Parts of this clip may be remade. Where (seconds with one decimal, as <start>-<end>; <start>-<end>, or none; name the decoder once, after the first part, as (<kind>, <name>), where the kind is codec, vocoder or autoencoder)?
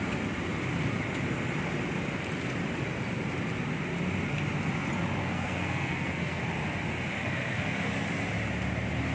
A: 5.2-6.4 (codec, SNAC); 7.2-7.9